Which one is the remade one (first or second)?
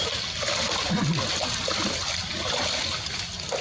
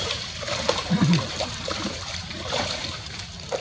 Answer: second